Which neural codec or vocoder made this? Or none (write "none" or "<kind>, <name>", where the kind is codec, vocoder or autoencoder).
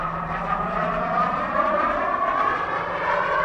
vocoder, BigVGAN v2